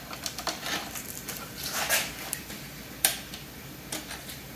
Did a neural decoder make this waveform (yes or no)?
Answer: no